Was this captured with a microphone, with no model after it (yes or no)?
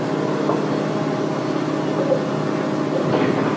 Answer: yes